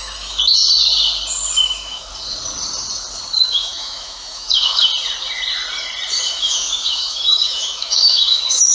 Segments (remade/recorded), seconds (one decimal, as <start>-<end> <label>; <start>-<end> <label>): 0.0-0.6 remade; 0.6-1.6 recorded; 1.6-2.1 remade; 2.1-3.4 recorded; 3.4-4.9 remade; 4.9-6.3 recorded; 6.3-8.7 remade